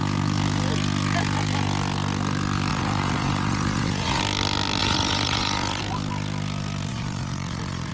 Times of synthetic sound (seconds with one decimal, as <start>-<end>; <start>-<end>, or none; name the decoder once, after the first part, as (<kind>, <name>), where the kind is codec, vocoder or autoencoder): 2.7-4.2 (vocoder, Vocos); 4.8-5.8; 6.9-7.9